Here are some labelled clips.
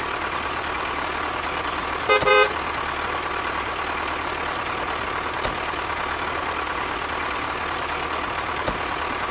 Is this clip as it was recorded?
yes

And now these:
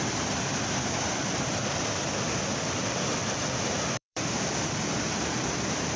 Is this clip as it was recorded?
no